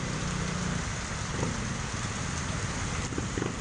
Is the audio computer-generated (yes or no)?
no